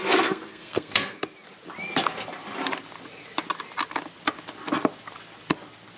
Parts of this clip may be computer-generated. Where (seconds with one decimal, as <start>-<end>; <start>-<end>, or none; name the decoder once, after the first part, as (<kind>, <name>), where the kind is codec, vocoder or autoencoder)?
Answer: 0.0-1.2 (codec, SNAC)